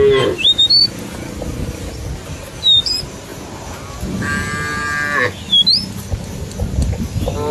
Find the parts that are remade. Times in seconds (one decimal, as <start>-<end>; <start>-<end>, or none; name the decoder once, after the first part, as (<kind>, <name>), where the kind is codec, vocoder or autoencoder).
none